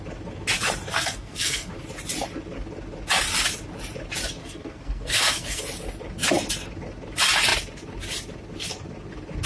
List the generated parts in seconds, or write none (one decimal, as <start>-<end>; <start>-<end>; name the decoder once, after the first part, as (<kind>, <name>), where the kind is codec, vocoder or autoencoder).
0.9-1.7 (codec, SNAC); 4.4-5.6